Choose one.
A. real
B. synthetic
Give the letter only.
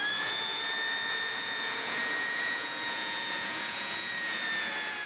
B